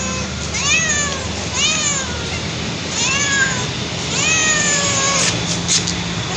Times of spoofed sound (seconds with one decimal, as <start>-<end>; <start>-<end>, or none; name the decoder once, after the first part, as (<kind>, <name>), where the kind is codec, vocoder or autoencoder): 4.4-4.9 (vocoder, BigVGAN v2)